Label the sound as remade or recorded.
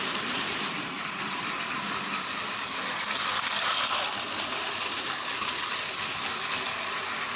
recorded